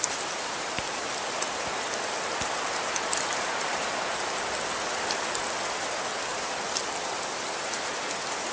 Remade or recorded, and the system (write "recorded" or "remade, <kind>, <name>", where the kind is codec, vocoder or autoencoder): recorded